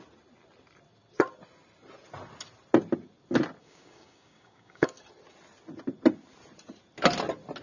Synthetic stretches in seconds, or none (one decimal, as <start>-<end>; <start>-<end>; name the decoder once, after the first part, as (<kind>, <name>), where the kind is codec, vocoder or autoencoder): 3.6-4.9 (codec, DAC)